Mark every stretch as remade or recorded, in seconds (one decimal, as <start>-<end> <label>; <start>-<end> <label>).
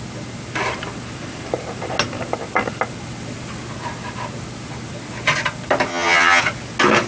0.0-5.9 recorded; 5.9-6.4 remade; 6.4-7.1 recorded